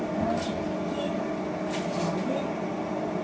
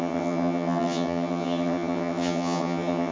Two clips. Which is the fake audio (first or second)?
second